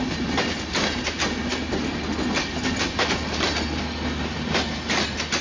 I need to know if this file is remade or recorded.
recorded